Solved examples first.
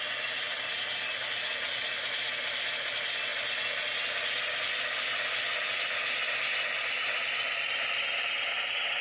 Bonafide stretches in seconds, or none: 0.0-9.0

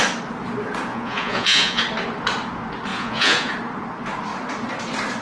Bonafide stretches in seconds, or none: 0.0-0.9; 1.8-2.9; 3.5-5.2

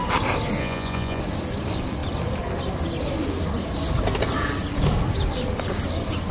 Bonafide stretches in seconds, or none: 0.0-0.6; 1.2-6.3

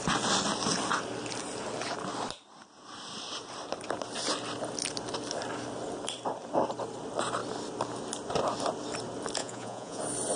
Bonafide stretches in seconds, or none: 0.0-9.4; 10.0-10.4

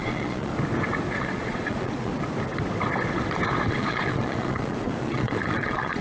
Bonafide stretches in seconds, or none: 0.5-1.1; 2.1-3.7